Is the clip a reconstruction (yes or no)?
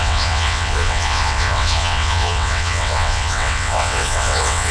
yes